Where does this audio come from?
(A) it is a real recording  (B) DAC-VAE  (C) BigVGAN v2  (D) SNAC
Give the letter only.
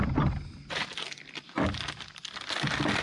A